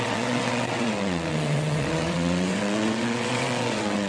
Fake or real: fake